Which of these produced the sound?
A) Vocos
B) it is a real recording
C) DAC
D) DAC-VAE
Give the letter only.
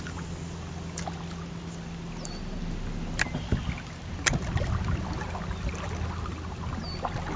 B